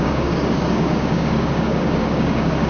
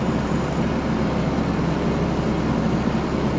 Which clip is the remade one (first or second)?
first